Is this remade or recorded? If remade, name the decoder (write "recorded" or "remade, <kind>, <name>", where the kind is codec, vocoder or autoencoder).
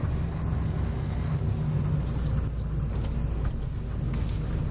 recorded